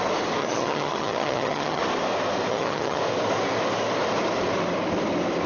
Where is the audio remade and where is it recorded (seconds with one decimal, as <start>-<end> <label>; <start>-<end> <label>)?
0.0-0.4 recorded; 0.4-1.8 remade; 1.8-2.5 recorded; 2.5-3.0 remade; 3.0-5.5 recorded